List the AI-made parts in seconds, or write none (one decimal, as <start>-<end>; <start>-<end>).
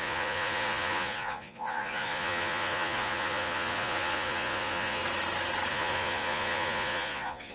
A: 0.0-5.0; 5.7-7.5